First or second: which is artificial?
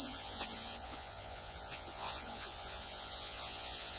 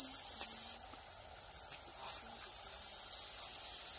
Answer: first